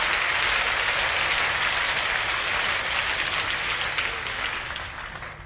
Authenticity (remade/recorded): recorded